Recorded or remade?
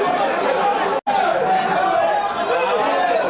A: recorded